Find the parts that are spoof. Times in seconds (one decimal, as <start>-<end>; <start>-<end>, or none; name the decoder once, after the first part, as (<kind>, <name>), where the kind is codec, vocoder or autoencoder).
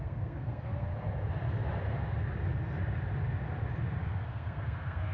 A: 0.0-0.9 (codec, SNAC); 4.0-5.1